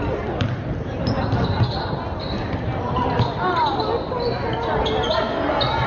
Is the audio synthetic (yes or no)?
no